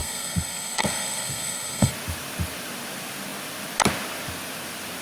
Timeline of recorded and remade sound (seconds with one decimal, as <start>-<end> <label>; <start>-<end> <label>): 0.0-1.9 remade; 1.9-5.0 recorded